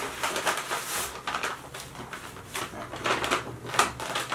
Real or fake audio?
real